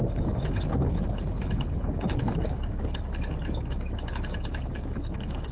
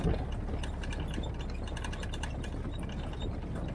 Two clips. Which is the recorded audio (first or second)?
second